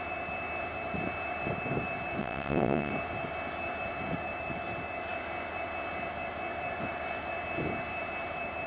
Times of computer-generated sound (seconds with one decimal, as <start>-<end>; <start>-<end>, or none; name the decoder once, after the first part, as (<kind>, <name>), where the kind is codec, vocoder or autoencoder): 2.2-2.9 (vocoder, WaveNeXt)